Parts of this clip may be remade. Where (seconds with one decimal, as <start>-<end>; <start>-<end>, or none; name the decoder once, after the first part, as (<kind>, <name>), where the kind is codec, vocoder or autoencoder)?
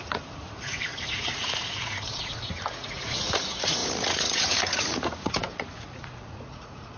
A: 0.0-7.0 (vocoder, Vocos)